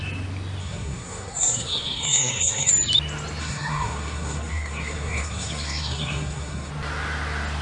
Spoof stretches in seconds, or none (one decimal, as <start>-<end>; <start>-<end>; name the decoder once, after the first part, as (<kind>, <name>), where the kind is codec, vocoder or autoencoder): 0.6-2.7 (codec, SNAC); 3.4-6.7